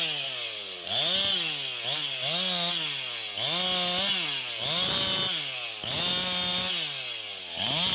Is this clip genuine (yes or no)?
yes